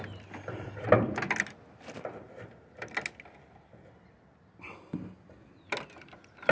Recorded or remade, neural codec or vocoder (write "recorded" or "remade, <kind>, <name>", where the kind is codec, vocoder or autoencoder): recorded